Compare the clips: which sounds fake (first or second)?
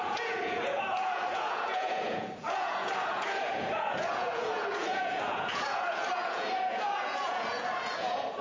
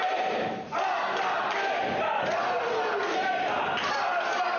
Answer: first